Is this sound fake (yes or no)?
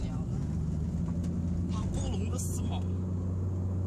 no